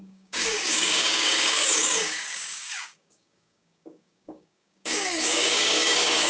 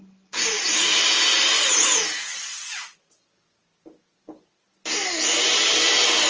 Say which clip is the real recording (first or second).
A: second